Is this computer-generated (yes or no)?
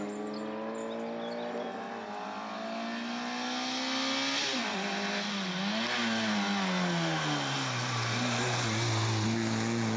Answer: no